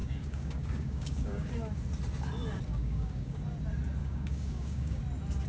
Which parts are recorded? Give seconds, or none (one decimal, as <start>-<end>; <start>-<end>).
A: 1.5-2.7; 3.4-4.0; 5.0-5.5